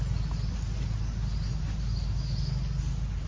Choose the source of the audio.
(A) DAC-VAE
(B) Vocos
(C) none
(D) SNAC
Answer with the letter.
C